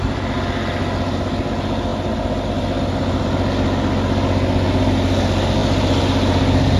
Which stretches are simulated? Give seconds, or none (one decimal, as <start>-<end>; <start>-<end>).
none